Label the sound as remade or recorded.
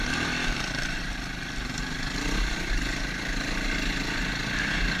recorded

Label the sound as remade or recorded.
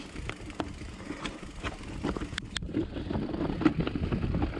recorded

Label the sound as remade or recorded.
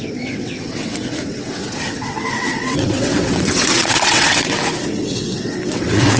remade